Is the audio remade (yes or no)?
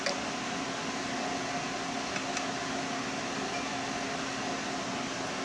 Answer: no